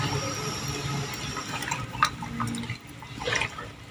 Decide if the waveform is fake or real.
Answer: real